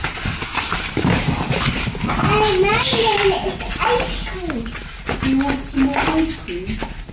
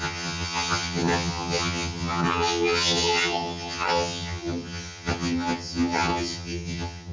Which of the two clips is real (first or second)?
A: first